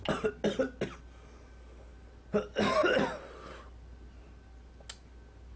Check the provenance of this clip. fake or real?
real